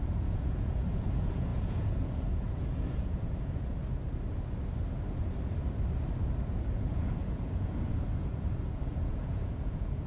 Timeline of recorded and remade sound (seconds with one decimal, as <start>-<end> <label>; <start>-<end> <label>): 0.0-3.8 remade; 3.8-6.5 recorded; 6.5-10.1 remade